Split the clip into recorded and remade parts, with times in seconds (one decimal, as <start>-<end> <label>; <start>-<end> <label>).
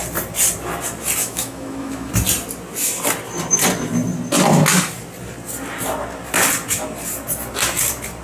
0.0-1.2 recorded; 1.2-2.1 remade; 2.1-8.2 recorded